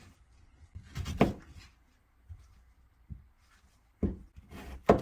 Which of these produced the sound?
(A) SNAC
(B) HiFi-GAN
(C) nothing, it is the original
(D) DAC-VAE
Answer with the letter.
C